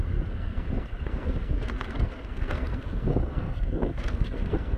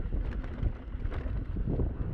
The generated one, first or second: first